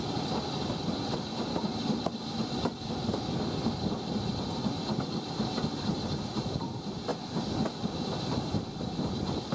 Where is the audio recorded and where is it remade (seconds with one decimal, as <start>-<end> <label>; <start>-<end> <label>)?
0.0-9.5 remade